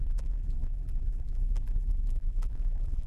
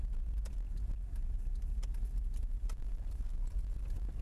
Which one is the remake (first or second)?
first